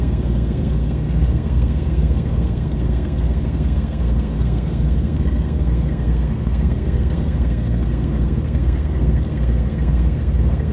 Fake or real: fake